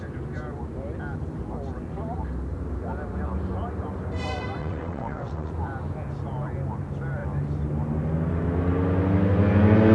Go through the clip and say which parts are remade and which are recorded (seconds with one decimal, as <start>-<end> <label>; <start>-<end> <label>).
0.0-4.6 recorded; 4.6-5.5 remade; 5.5-9.9 recorded